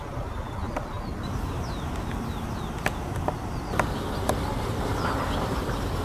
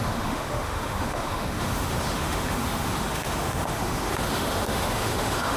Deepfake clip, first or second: second